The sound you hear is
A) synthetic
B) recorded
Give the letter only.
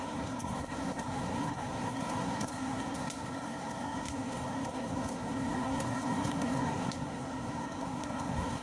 A